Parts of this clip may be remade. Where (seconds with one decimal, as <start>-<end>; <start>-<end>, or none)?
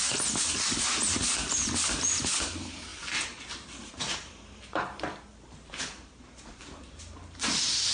0.0-7.9